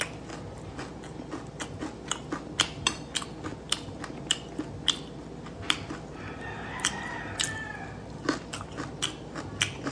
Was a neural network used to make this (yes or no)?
no